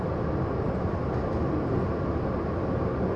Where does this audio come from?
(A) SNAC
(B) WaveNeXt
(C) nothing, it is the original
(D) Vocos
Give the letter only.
C